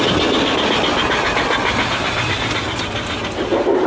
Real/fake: real